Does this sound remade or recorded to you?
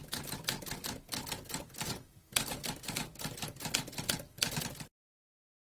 recorded